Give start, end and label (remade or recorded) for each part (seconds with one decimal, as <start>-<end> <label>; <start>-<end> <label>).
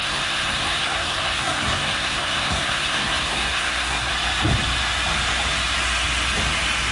0.0-4.1 remade; 4.1-6.9 recorded